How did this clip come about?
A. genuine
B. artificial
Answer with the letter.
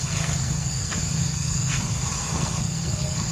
B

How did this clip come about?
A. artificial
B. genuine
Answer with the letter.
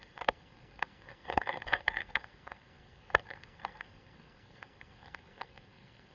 A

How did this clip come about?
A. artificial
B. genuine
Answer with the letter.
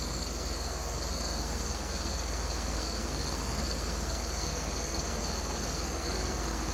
A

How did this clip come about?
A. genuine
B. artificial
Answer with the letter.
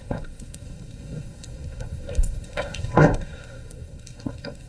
B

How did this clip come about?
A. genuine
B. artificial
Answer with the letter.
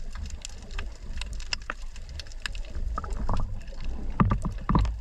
A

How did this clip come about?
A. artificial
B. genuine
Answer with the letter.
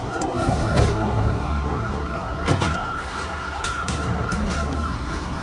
A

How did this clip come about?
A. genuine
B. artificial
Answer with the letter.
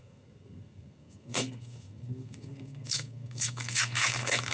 B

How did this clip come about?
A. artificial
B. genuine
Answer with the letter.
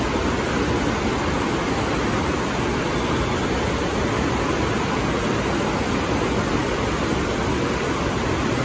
B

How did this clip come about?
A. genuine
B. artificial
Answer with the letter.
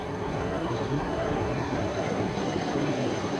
B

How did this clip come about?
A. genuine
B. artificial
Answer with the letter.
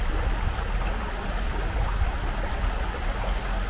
A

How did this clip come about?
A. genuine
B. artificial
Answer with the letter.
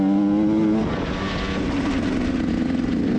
A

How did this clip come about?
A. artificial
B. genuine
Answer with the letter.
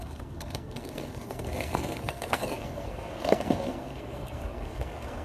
A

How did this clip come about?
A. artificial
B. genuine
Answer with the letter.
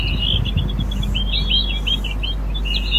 B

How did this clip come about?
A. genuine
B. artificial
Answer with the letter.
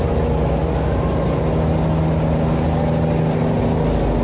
A